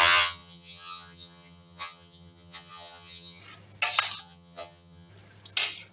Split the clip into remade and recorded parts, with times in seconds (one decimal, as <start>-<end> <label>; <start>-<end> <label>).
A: 0.0-3.4 remade; 3.4-4.2 recorded; 4.2-5.1 remade; 5.1-5.9 recorded